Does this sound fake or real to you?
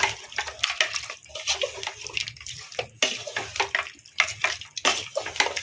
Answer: real